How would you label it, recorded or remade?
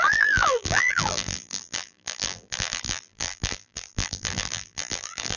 remade